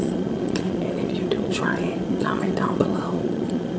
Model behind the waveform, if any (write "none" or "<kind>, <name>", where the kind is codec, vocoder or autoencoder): vocoder, Vocos